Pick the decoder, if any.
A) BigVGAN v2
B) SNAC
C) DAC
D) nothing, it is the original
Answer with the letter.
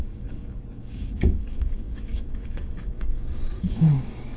C